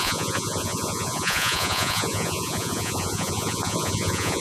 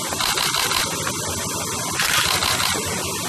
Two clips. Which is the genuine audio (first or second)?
second